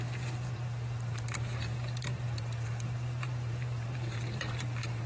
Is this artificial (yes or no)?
yes